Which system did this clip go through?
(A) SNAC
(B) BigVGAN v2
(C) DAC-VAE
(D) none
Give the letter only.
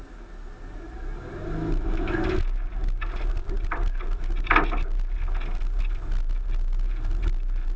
D